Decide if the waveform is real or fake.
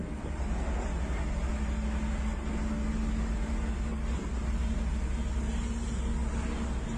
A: real